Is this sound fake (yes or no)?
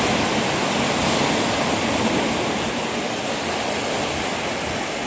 no